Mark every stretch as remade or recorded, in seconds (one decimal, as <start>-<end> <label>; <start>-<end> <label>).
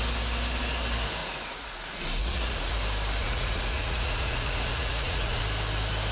0.0-1.2 recorded; 1.2-1.8 remade; 1.8-2.2 recorded; 2.2-2.8 remade; 2.8-3.2 recorded; 3.2-5.4 remade; 5.4-6.1 recorded